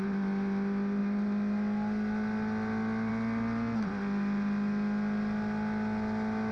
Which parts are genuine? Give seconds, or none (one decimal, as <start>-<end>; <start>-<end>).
0.0-6.5